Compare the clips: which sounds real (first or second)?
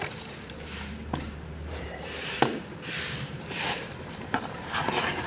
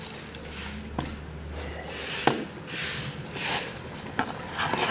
second